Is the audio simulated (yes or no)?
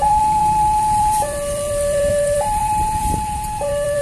yes